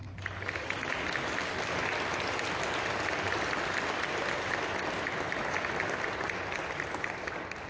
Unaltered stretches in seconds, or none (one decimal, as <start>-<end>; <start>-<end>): 0.0-7.7